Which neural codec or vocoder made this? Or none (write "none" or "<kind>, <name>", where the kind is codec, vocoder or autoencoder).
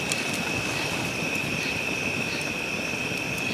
vocoder, BigVGAN v2